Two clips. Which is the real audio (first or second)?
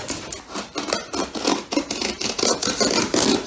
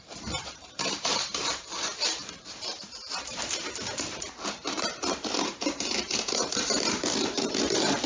first